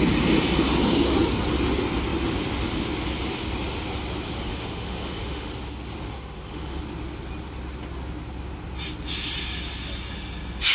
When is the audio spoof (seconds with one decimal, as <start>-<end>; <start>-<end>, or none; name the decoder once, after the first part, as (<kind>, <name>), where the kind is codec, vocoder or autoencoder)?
4.5-5.5 (autoencoder, DAC-VAE); 6.1-6.8